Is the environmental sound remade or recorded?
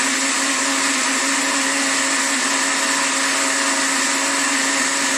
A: recorded